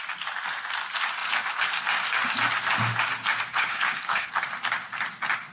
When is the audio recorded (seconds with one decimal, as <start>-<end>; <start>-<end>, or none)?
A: 0.0-3.5; 4.3-5.5